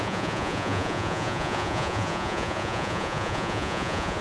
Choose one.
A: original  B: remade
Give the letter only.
B